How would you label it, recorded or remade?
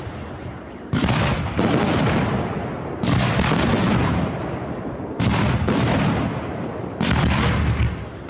recorded